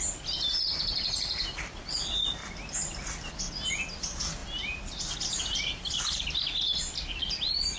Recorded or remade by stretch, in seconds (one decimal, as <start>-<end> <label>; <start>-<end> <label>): 0.0-7.8 recorded